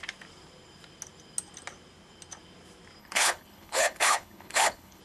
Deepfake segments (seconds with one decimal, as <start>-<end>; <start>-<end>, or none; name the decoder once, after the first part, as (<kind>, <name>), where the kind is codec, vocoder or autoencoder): 3.0-5.0 (codec, HILCodec)